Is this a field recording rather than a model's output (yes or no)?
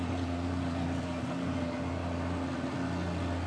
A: yes